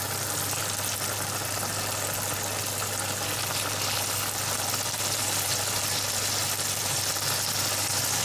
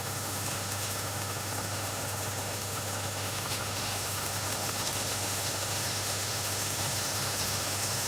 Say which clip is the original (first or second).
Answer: first